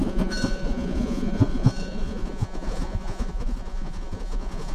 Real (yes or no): no